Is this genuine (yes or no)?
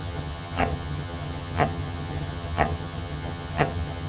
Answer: no